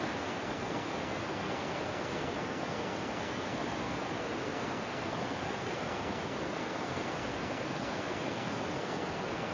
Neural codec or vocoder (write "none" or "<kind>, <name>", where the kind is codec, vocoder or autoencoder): codec, SNAC